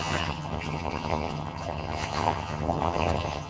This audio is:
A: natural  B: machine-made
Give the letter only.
B